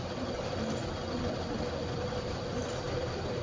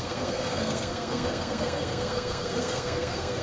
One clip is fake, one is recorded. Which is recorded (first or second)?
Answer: first